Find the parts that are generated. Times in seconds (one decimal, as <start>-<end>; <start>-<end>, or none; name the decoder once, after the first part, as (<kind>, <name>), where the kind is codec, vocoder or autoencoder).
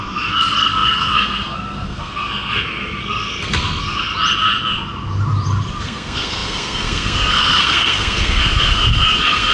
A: 0.0-4.1 (codec, SNAC); 5.8-9.5